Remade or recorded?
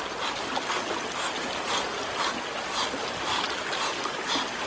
recorded